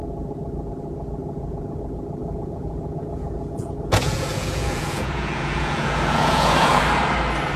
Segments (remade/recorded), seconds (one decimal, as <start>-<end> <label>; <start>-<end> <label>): 0.0-1.2 recorded; 1.2-1.8 remade; 1.8-2.2 recorded; 2.2-6.8 remade; 6.8-7.6 recorded